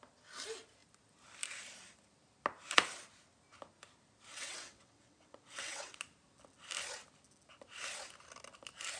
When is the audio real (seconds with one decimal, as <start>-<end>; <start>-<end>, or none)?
0.0-4.3; 6.0-9.0